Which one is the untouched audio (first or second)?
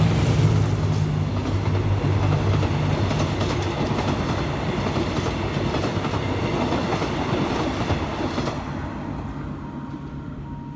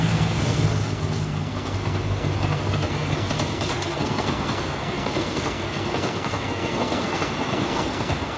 first